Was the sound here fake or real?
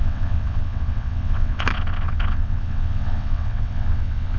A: fake